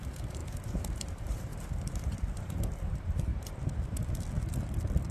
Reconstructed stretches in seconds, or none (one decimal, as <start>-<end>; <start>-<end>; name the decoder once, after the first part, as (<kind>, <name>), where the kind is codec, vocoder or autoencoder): 0.0-3.3 (vocoder, BigVGAN v2)